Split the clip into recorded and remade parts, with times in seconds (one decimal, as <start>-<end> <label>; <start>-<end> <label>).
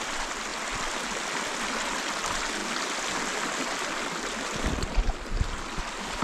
0.0-6.2 recorded